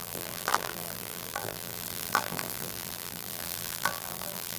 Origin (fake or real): fake